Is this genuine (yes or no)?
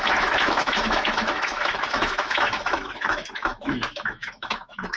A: no